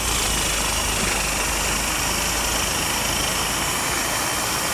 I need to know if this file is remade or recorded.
recorded